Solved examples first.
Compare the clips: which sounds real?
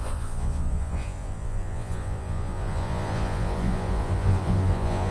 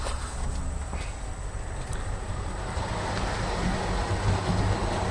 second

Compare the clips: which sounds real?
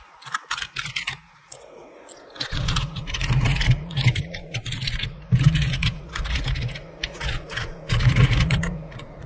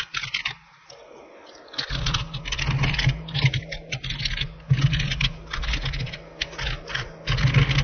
second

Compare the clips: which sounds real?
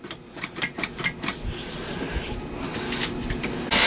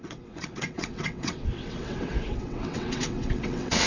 first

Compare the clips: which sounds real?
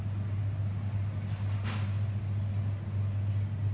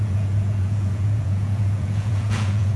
first